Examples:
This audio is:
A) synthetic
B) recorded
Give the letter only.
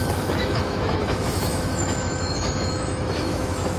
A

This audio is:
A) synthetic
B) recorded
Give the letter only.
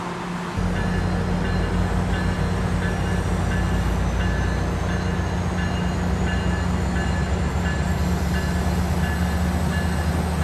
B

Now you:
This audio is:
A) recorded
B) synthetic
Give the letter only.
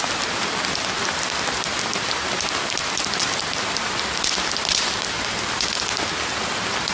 A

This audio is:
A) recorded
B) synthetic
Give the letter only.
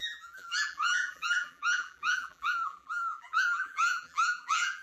B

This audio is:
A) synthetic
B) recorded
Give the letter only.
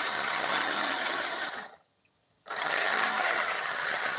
A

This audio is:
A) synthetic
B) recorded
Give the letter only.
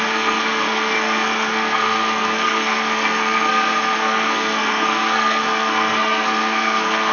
A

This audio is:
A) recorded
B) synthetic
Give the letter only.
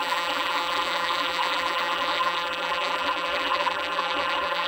B